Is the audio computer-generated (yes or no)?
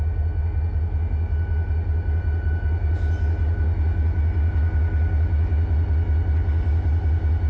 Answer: no